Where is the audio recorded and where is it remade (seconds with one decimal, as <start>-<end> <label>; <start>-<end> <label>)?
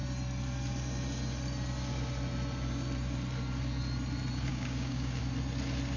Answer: 0.0-4.5 recorded; 4.5-5.2 remade; 5.2-6.0 recorded